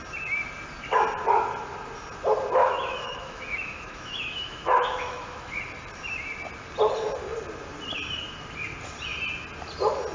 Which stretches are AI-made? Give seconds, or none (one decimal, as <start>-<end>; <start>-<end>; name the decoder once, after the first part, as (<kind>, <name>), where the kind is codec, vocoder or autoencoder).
2.6-5.5 (autoencoder, DAC-VAE)